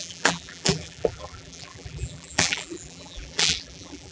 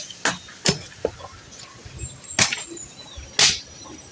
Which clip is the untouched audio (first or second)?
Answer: second